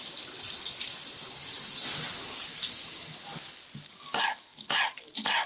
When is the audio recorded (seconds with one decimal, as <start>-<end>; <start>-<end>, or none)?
0.0-5.5